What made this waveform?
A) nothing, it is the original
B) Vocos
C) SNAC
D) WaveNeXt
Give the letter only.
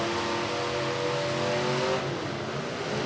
A